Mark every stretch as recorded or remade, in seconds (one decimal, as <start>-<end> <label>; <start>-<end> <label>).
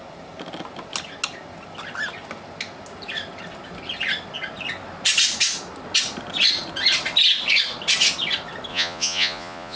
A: 0.0-8.7 recorded; 8.7-9.8 remade